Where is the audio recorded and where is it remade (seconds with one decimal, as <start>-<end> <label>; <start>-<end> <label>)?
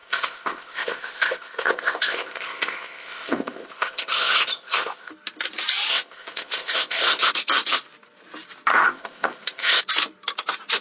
0.0-5.1 remade; 5.1-5.9 recorded; 5.9-7.3 remade; 7.3-8.7 recorded; 8.7-9.8 remade; 9.8-10.8 recorded